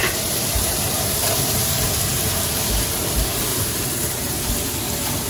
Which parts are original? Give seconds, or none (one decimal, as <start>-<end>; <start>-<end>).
2.4-3.5; 4.5-5.3